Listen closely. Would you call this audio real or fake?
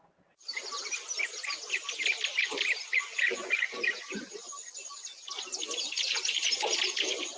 real